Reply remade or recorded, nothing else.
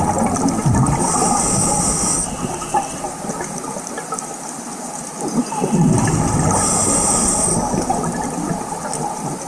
recorded